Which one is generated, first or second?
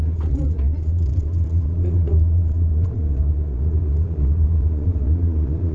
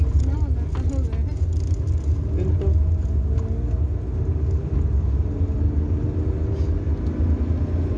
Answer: first